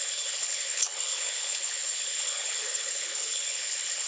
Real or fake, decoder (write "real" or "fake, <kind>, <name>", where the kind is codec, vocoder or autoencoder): fake, codec, HILCodec